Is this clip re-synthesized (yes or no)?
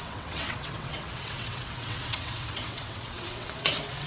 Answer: yes